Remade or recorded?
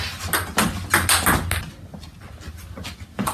recorded